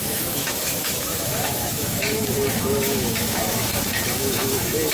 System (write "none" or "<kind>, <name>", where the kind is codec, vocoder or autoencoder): autoencoder, DAC-VAE